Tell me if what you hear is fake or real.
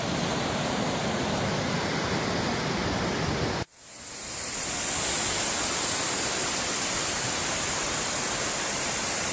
fake